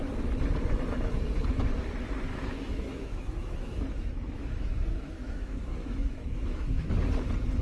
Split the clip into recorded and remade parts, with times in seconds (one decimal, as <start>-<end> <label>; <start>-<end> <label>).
0.0-2.3 recorded; 2.3-6.9 remade; 6.9-7.6 recorded